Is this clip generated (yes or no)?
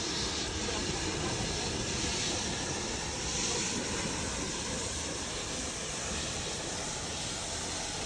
no